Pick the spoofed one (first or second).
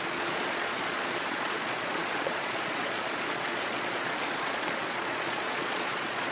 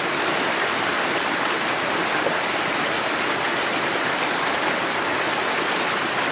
first